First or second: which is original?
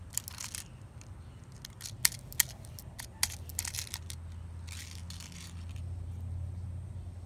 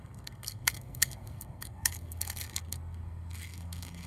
first